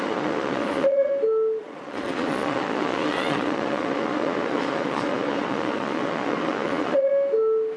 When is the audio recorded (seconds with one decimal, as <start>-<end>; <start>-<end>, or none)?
1.1-1.6; 7.1-7.8

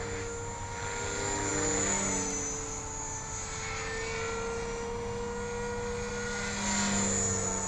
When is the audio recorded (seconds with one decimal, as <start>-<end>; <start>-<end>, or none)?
0.0-7.7

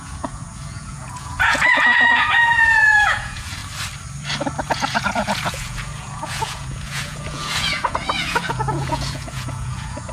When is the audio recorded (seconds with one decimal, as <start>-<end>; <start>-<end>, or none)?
3.6-4.6